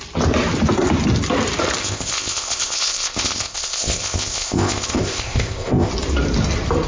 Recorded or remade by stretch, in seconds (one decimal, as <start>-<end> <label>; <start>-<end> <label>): 0.0-1.8 recorded; 1.8-5.9 remade; 5.9-6.9 recorded